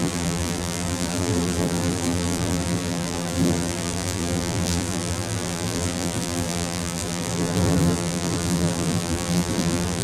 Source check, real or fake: fake